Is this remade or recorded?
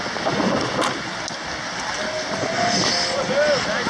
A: recorded